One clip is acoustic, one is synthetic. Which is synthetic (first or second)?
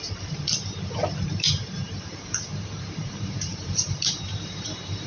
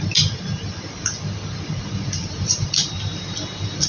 first